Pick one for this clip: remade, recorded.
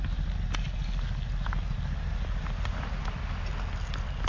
recorded